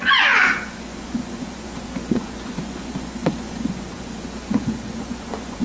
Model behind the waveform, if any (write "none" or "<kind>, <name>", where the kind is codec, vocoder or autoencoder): vocoder, Vocos